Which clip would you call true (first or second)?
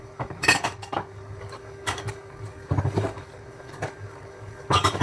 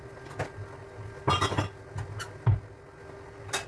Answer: second